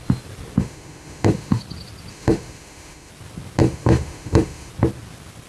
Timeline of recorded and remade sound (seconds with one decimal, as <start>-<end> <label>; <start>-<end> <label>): 0.0-0.6 recorded; 0.6-1.6 remade; 1.6-2.1 recorded; 2.1-3.1 remade; 3.1-3.6 recorded; 3.6-4.7 remade; 4.7-5.5 recorded